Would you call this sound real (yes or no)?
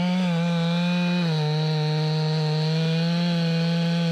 yes